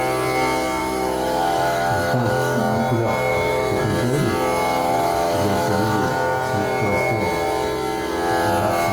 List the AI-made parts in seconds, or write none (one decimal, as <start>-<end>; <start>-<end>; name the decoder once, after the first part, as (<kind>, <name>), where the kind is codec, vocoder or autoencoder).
0.8-2.6 (autoencoder, DAC-VAE); 3.3-3.8; 4.8-6.1